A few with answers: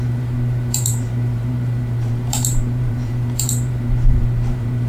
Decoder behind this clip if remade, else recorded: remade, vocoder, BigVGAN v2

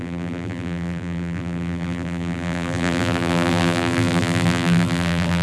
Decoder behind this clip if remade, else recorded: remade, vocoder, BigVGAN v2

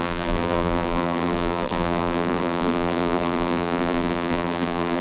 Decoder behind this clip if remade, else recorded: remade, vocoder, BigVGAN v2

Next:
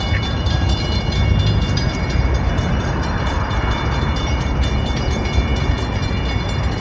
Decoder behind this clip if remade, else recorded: remade, vocoder, BigVGAN v2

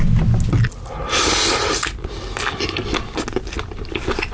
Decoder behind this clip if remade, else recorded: recorded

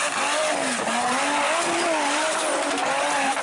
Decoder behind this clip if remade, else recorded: recorded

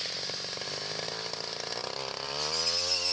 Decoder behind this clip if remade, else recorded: recorded